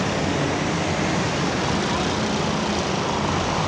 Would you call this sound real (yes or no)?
yes